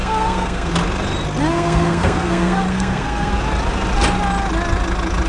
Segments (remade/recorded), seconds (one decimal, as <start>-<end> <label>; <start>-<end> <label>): 0.0-0.7 remade; 0.7-1.5 recorded; 1.5-3.3 remade; 3.3-5.3 recorded